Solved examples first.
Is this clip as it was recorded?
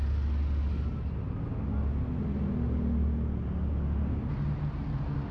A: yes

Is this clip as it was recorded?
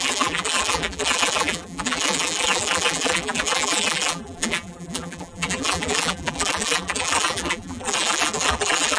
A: no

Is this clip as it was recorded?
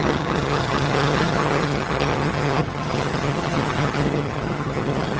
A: no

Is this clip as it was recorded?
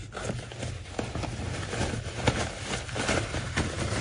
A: yes